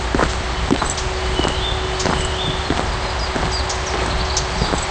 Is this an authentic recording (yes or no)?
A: yes